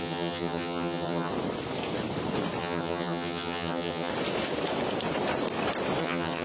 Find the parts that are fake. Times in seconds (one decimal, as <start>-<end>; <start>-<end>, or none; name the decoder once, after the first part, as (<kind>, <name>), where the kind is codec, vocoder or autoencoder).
0.0-1.3 (vocoder, HiFi-GAN); 2.6-4.1; 6.0-6.4

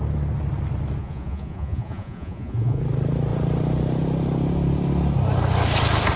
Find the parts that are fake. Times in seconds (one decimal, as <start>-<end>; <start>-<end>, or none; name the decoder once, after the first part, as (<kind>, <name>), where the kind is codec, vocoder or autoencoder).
1.0-2.8 (vocoder, Vocos)